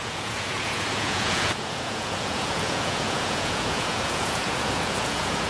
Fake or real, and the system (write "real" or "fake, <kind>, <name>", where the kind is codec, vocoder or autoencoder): fake, vocoder, Vocos